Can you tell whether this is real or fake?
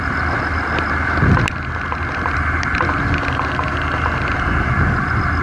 real